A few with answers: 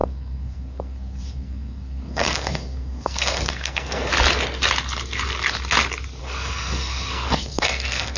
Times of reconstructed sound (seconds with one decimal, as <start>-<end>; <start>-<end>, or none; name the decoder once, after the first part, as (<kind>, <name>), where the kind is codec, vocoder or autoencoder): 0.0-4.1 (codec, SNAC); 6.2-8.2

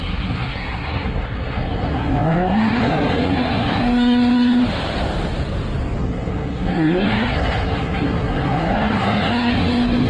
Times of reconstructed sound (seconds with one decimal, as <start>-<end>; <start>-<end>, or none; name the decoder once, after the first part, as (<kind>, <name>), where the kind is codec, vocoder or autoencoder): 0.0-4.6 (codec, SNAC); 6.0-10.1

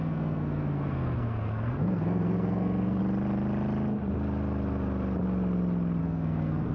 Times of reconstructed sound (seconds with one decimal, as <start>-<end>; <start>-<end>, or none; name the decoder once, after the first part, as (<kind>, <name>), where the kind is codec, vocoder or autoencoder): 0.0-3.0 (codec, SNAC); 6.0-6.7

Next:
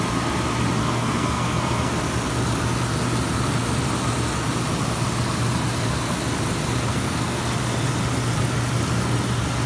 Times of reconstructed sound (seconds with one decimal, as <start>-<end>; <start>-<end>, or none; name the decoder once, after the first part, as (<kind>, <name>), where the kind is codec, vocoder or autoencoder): 0.8-1.9 (codec, SNAC); 6.9-7.4

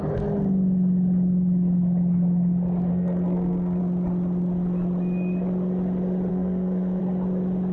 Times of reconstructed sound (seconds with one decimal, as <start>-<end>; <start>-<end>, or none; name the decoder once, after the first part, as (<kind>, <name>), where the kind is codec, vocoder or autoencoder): 2.9-3.8 (codec, SNAC); 6.3-7.0

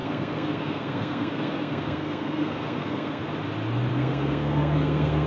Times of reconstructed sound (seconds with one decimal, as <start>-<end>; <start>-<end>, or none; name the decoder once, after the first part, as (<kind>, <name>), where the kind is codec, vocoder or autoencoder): 0.0-3.2 (codec, SNAC); 3.9-5.3

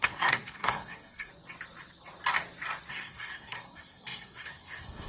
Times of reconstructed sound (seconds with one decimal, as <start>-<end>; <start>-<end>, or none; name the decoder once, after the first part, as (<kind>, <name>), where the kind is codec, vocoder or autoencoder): 0.0-1.3 (codec, SNAC); 2.9-5.1